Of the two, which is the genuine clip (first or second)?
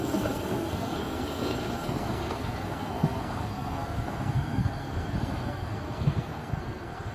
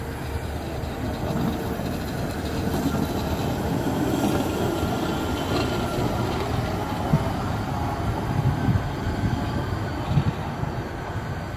second